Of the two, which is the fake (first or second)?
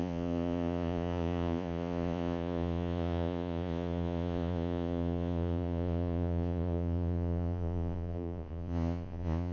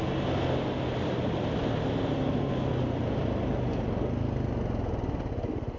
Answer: first